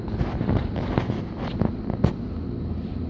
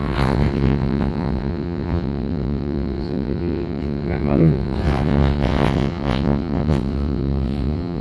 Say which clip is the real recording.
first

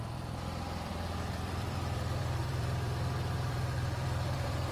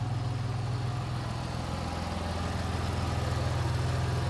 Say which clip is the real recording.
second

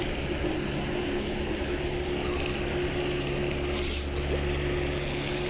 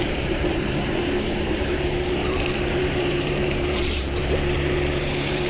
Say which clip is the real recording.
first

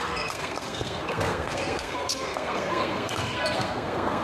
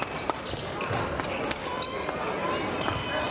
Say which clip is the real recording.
second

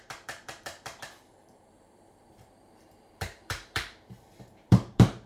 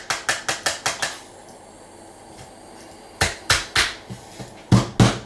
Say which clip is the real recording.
second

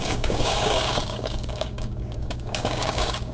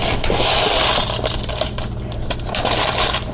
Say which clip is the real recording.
second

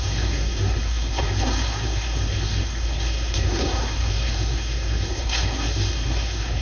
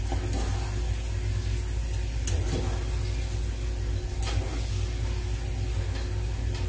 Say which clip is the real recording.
second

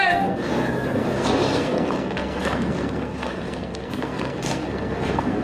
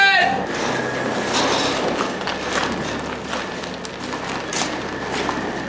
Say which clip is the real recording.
second